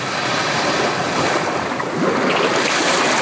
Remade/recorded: recorded